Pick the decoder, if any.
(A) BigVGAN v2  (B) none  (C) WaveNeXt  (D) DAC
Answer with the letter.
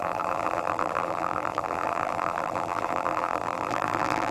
A